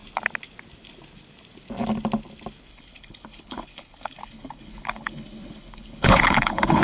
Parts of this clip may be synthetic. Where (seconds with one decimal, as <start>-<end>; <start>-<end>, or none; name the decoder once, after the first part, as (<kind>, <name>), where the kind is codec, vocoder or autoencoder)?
2.7-6.8 (codec, HILCodec)